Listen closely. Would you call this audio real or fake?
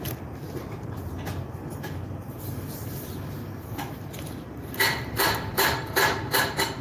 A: fake